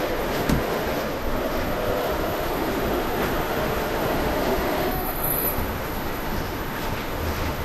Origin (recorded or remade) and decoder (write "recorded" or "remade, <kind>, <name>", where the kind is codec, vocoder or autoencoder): remade, autoencoder, DAC-VAE